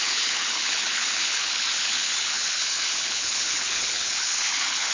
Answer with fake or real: fake